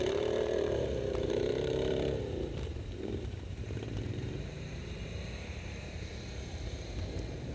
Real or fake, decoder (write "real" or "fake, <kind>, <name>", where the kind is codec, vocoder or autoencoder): fake, vocoder, BigVGAN v2